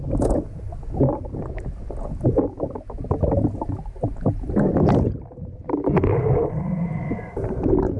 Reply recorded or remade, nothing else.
recorded